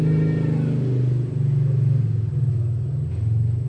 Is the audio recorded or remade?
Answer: recorded